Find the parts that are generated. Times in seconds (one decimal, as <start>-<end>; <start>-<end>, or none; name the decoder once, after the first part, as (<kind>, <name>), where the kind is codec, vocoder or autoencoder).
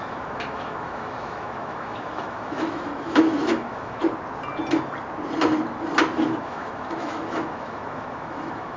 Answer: 0.0-4.0 (autoencoder, DAC-VAE); 6.4-8.8